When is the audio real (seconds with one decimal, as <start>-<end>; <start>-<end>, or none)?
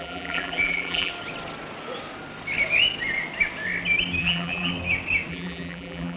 1.1-4.2; 4.7-5.3